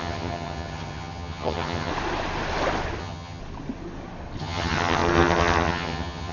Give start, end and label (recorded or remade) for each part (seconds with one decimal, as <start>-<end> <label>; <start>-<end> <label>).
0.0-1.9 remade; 1.9-3.0 recorded; 3.0-3.4 remade; 3.4-4.4 recorded; 4.4-6.3 remade